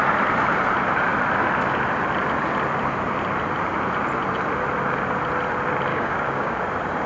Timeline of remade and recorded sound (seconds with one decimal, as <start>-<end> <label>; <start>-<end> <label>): 0.0-5.9 recorded; 5.9-6.6 remade; 6.6-7.1 recorded